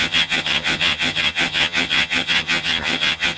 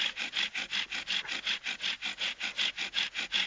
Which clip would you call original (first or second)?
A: second